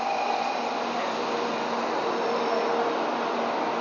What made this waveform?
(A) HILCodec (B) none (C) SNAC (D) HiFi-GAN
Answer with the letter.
B